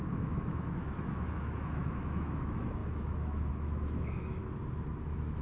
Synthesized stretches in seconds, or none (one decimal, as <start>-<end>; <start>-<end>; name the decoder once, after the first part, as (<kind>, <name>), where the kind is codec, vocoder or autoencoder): 0.0-4.4 (autoencoder, DAC-VAE); 5.0-5.4

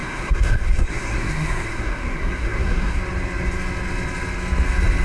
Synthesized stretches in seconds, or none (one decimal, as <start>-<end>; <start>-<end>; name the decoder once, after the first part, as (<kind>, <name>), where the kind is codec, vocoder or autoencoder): 0.0-3.0 (codec, SNAC)

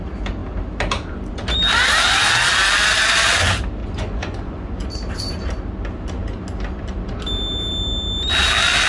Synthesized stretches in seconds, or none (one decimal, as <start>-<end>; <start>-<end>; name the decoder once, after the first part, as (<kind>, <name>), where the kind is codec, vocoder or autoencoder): 3.8-4.9 (vocoder, Vocos)

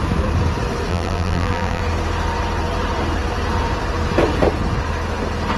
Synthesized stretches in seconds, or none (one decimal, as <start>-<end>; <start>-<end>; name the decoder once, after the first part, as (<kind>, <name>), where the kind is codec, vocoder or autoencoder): 0.9-1.8 (vocoder, BigVGAN v2)

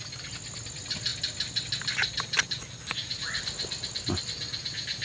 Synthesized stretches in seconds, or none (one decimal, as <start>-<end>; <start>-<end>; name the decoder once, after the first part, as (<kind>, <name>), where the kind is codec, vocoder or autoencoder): none

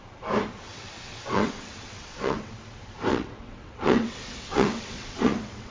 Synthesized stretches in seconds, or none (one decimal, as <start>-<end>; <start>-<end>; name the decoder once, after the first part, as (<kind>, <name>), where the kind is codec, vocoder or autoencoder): 0.7-2.5 (vocoder, WaveNeXt); 3.1-5.7

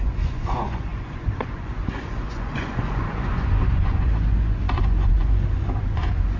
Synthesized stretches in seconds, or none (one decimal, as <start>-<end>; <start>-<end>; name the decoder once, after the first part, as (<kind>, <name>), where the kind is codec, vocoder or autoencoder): 0.0-6.4 (vocoder, Vocos)

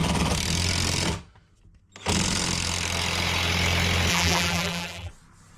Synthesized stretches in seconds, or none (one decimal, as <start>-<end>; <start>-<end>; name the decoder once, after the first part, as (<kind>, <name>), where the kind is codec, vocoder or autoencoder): 4.1-5.1 (vocoder, BigVGAN v2)